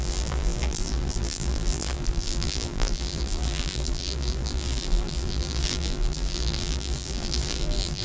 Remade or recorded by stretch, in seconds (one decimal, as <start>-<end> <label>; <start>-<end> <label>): 0.0-8.0 remade